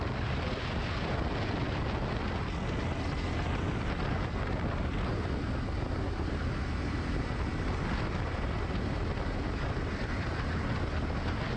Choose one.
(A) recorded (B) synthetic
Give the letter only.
A